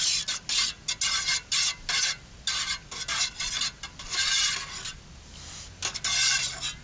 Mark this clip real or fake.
real